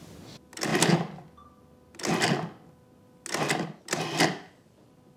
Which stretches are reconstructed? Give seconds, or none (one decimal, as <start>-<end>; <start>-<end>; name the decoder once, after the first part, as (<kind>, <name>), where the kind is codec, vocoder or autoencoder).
none